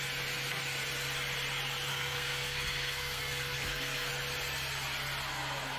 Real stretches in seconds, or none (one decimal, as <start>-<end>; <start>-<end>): 0.0-1.9; 4.1-5.8